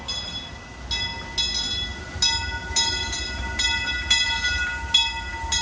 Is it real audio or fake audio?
real